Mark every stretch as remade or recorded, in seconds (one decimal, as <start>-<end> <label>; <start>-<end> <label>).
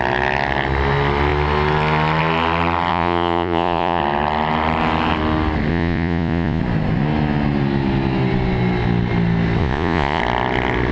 0.0-2.9 recorded; 2.9-4.0 remade; 4.0-5.7 recorded; 5.7-6.6 remade; 6.6-9.6 recorded; 9.6-10.2 remade; 10.2-10.9 recorded